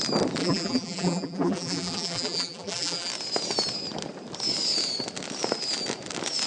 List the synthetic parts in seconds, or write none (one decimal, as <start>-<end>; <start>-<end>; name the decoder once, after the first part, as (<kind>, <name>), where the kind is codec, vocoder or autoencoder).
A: 0.4-3.1 (vocoder, BigVGAN v2)